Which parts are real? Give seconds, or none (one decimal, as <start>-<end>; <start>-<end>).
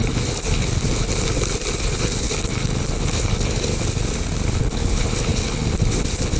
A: 1.1-1.8; 3.7-4.6